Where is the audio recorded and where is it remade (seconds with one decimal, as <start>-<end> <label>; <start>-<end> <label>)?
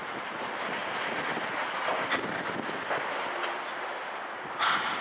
0.0-5.0 recorded